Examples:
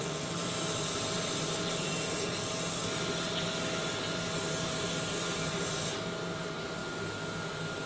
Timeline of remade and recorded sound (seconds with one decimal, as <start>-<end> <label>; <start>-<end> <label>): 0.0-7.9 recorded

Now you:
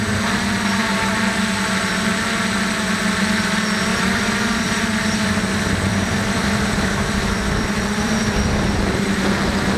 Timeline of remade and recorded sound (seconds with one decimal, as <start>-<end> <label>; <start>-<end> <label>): 0.0-3.9 recorded; 3.9-4.8 remade; 4.8-5.9 recorded; 5.9-9.4 remade; 9.4-9.8 recorded

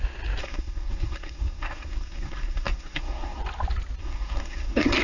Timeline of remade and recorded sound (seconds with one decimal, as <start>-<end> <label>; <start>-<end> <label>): 0.0-0.4 recorded; 0.4-3.4 remade; 3.4-4.0 recorded; 4.0-5.0 remade

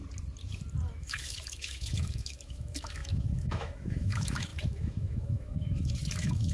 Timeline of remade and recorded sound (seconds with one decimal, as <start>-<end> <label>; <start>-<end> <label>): 0.0-1.0 recorded; 1.0-6.5 remade